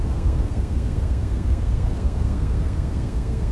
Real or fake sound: fake